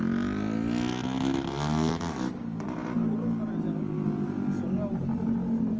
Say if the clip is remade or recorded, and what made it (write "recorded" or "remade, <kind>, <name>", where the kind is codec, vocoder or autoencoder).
recorded